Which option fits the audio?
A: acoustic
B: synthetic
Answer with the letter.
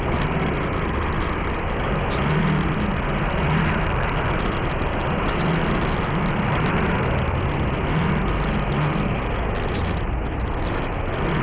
A